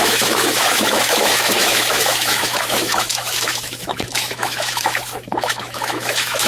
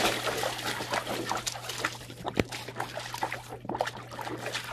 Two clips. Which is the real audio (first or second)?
second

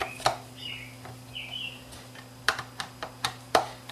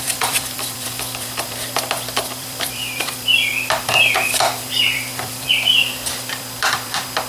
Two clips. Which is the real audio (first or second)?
first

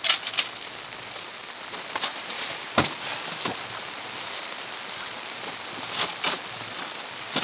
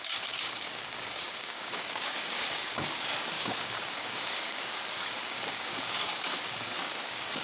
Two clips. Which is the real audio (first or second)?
first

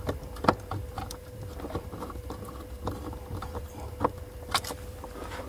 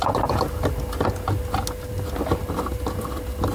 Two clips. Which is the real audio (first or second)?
second